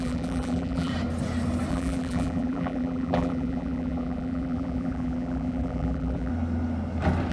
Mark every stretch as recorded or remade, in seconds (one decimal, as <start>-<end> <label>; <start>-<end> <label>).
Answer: 0.0-0.9 remade; 0.9-1.7 recorded; 1.7-6.3 remade; 6.3-7.3 recorded